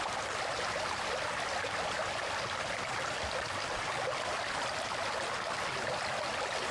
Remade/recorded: recorded